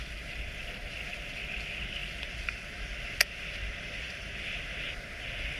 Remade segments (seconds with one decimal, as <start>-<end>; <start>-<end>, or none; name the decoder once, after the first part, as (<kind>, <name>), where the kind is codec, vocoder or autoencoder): none